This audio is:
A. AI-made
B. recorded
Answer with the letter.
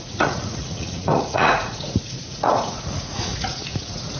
A